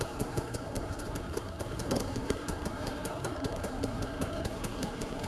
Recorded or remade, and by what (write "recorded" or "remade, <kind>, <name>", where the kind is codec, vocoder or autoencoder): remade, codec, SNAC